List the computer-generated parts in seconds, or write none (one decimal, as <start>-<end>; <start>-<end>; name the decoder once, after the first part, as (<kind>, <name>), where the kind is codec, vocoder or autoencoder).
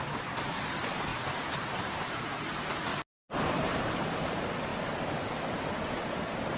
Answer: 0.0-2.9 (vocoder, BigVGAN v2); 3.6-4.7; 6.0-6.6